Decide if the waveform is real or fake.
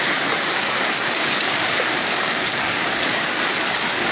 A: fake